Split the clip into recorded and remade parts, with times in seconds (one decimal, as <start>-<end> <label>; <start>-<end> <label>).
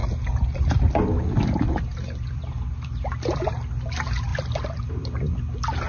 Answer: 0.0-5.9 recorded